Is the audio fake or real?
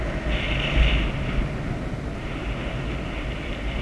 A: real